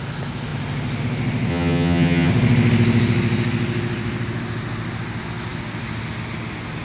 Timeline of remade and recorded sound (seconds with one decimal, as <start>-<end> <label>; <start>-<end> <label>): 0.0-1.5 recorded; 1.5-2.3 remade; 2.3-6.8 recorded